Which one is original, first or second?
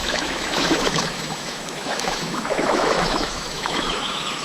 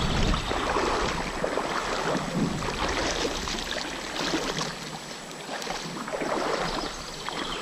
second